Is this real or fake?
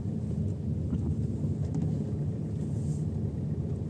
real